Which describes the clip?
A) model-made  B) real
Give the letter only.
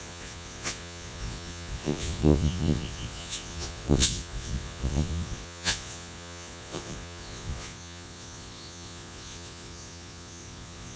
A